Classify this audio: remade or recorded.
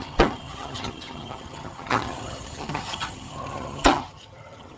remade